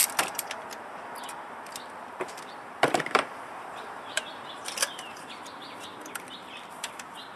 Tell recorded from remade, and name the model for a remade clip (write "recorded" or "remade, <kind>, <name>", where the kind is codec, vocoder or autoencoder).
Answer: remade, vocoder, BigVGAN v2